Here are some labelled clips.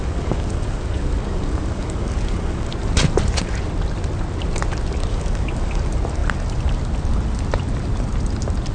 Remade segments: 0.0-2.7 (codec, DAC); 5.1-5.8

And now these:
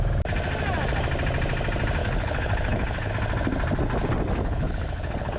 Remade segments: 2.0-3.1 (codec, HILCodec); 4.4-5.4

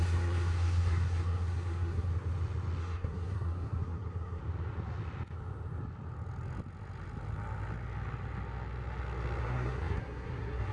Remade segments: 0.0-2.1 (codec, SNAC); 2.8-4.4; 9.4-10.7